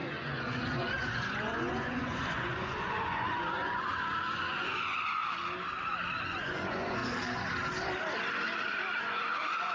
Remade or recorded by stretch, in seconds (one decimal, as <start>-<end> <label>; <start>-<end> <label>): 0.0-5.2 remade; 5.2-6.2 recorded; 6.2-7.0 remade; 7.0-9.0 recorded; 9.0-9.7 remade